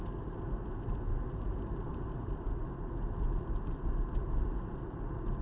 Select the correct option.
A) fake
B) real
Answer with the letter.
B